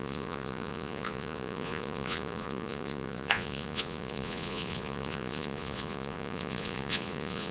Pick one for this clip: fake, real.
fake